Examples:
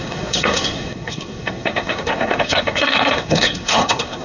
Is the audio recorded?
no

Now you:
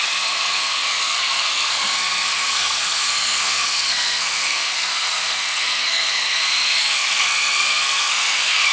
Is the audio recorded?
no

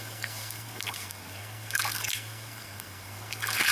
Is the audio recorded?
no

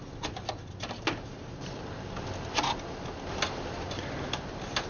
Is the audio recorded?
yes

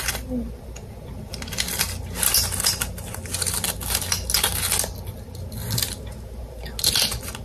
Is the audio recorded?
yes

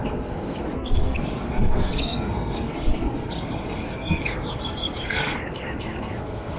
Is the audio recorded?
no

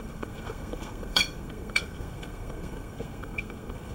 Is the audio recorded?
no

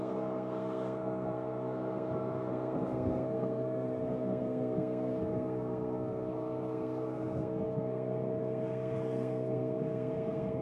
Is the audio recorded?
no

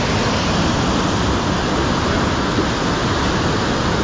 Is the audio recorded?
yes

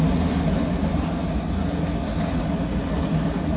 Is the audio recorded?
yes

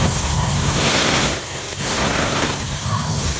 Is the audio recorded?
no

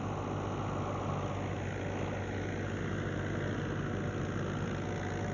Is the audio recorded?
yes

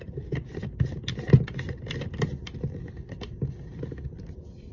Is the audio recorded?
yes